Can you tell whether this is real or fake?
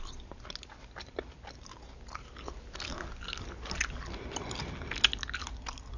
real